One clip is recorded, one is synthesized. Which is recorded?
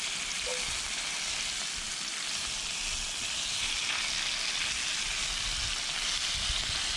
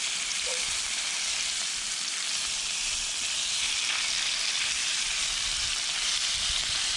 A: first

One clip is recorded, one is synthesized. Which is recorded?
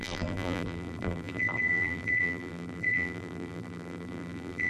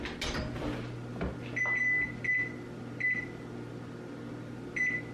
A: second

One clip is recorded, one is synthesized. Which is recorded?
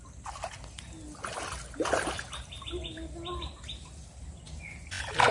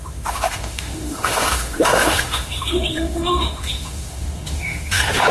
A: first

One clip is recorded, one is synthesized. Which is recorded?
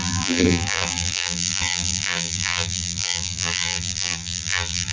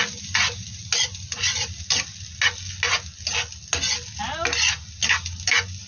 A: second